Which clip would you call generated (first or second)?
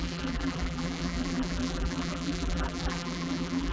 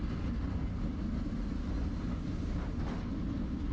first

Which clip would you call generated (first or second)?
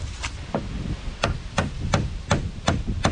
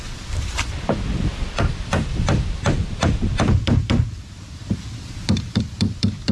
second